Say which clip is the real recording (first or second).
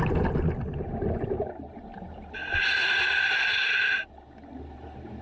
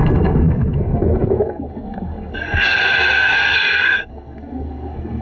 first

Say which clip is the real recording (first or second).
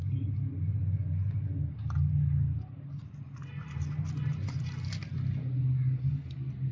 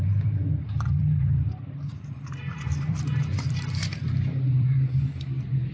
first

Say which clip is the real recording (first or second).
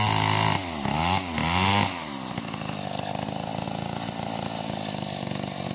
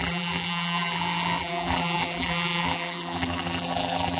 first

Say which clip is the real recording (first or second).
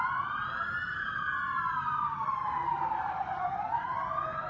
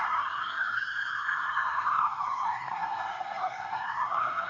first